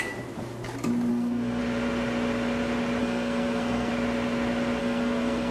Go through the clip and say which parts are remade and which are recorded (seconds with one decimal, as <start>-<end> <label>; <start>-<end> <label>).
0.0-1.1 recorded; 1.1-1.6 remade; 1.6-3.0 recorded; 3.0-3.9 remade; 3.9-4.8 recorded; 4.8-5.5 remade